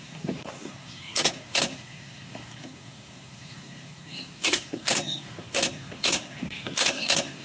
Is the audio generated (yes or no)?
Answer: yes